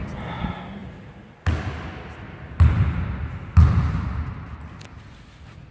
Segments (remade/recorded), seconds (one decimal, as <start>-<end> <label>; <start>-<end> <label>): 0.0-5.7 recorded